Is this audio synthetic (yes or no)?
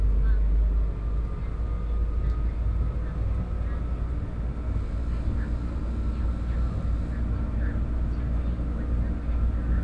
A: no